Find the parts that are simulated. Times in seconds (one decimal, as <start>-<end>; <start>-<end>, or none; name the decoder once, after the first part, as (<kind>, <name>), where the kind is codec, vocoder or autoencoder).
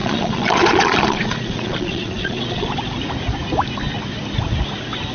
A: 0.0-2.7 (vocoder, Vocos)